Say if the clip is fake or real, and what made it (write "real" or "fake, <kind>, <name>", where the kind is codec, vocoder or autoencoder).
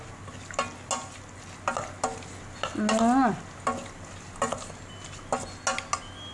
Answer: real